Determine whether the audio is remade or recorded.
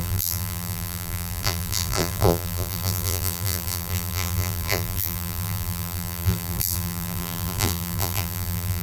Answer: remade